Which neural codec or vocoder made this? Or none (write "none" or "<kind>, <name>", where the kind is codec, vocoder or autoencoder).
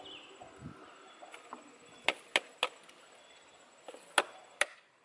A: none